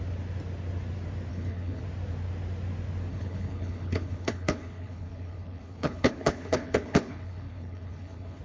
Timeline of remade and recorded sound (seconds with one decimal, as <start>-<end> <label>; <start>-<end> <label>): 0.0-1.3 recorded; 1.3-1.8 remade; 1.8-3.1 recorded; 3.1-8.4 remade